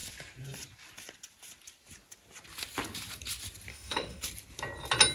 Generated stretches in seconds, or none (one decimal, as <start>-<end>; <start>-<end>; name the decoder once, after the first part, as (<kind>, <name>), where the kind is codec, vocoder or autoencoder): 3.7-4.2 (autoencoder, DAC-VAE)